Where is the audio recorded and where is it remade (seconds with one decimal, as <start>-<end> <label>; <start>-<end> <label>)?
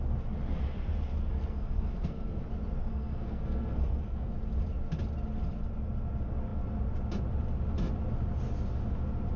0.0-1.3 recorded; 1.3-2.4 remade; 2.4-2.8 recorded; 2.8-4.3 remade; 4.3-9.4 recorded